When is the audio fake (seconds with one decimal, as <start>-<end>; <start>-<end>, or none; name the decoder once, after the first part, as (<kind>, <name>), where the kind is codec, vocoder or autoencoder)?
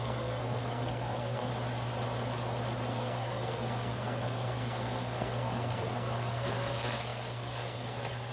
0.0-1.5 (codec, SNAC); 2.9-8.3